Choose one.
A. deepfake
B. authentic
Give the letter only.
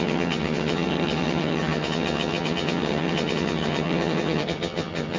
A